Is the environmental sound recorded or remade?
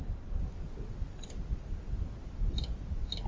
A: recorded